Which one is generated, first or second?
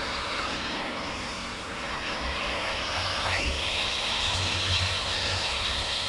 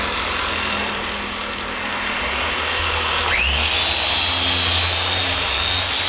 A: first